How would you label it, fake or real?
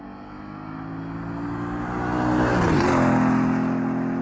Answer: real